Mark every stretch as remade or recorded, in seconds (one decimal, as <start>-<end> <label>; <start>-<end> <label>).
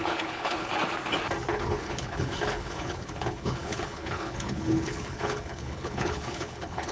0.0-0.7 remade; 0.7-1.5 recorded; 1.5-6.9 remade